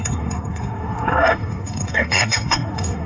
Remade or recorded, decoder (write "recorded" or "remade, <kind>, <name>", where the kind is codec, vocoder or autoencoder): remade, codec, SNAC